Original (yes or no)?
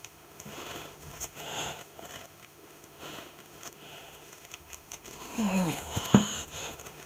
no